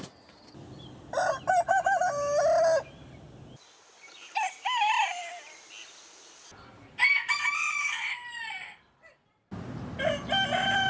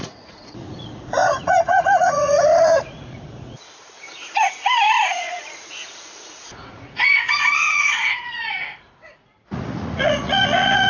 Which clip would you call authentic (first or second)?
first